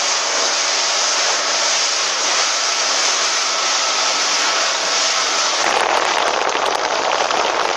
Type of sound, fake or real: fake